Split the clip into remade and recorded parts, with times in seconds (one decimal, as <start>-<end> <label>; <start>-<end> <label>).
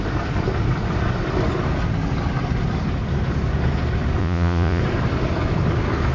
0.0-4.2 recorded; 4.2-4.8 remade; 4.8-6.1 recorded